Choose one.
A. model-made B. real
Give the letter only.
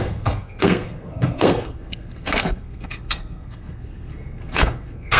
A